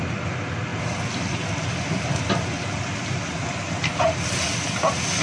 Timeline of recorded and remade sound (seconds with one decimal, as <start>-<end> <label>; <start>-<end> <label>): 0.0-5.2 recorded